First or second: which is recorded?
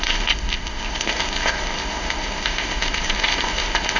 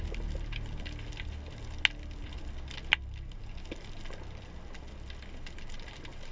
second